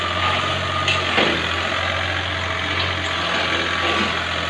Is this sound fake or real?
real